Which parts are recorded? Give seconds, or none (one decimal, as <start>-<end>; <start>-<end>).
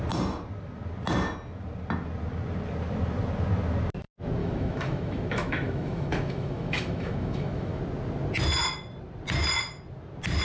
0.0-4.4; 7.8-10.4